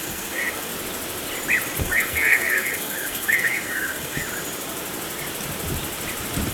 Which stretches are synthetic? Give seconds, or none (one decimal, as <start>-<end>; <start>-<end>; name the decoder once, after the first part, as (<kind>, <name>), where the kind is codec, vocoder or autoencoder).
0.0-0.7 (codec, SNAC); 1.8-4.2